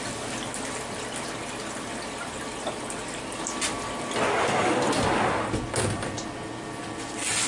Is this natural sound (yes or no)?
yes